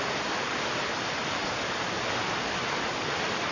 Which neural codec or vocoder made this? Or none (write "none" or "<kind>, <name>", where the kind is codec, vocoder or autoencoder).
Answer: none